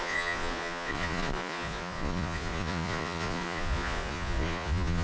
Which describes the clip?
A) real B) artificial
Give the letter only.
B